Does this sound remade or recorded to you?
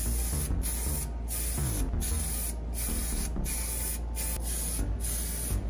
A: recorded